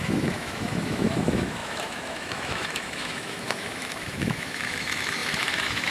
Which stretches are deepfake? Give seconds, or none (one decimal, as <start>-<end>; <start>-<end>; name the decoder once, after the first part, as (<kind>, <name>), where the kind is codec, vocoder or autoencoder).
0.0-5.9 (autoencoder, DAC-VAE)